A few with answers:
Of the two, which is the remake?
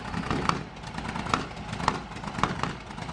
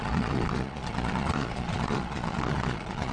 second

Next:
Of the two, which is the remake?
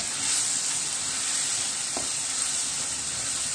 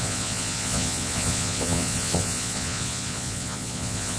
second